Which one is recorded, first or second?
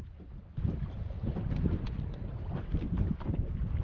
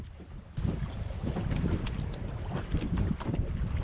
first